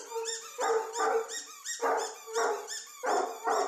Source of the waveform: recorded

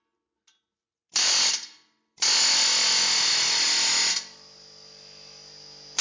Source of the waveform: recorded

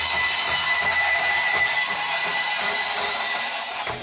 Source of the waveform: remade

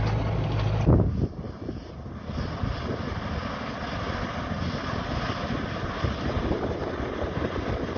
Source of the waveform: recorded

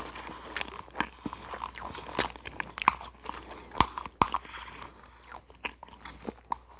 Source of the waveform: recorded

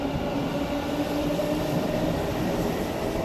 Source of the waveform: recorded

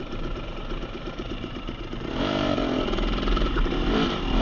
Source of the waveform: remade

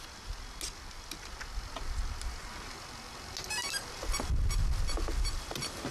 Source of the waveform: recorded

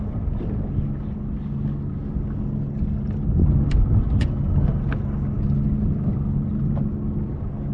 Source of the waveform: recorded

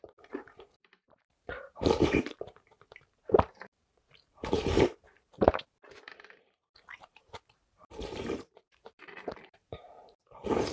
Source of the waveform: remade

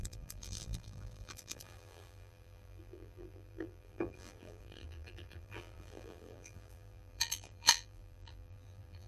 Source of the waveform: remade